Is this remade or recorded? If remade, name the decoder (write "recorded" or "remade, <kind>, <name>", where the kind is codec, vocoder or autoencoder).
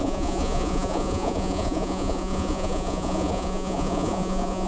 remade, vocoder, Vocos